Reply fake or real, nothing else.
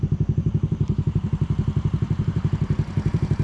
fake